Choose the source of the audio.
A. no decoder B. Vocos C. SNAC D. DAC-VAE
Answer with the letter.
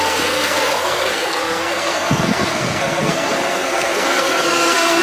C